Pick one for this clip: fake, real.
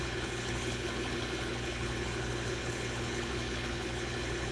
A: fake